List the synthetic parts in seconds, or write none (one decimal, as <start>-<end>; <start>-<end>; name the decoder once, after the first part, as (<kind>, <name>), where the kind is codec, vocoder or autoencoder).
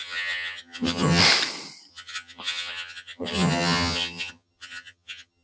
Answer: 0.0-1.2 (vocoder, HiFi-GAN); 1.9-5.4